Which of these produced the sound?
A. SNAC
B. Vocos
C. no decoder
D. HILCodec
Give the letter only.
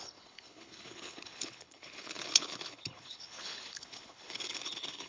D